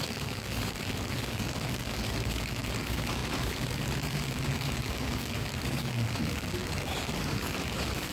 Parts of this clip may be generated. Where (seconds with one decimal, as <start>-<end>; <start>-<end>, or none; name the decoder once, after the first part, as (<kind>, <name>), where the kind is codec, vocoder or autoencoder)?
0.0-8.1 (codec, DAC)